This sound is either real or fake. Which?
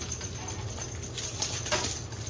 real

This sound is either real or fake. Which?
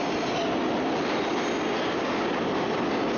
real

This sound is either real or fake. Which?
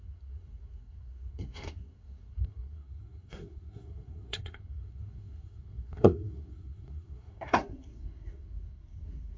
fake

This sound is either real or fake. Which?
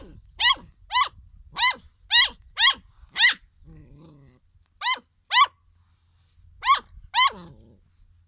real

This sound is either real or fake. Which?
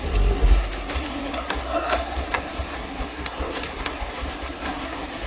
fake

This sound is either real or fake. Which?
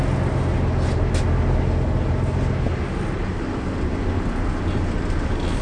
real